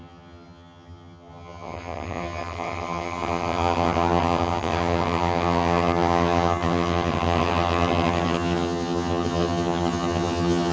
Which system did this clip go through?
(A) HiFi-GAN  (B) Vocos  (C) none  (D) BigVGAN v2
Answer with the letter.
A